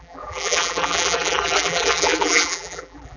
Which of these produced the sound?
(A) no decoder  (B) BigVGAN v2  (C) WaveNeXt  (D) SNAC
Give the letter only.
B